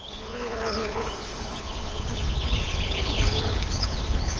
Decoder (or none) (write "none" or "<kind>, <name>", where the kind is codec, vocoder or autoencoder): codec, HILCodec